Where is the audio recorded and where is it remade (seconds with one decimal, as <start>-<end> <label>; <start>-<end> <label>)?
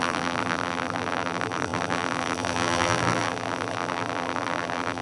0.0-5.0 remade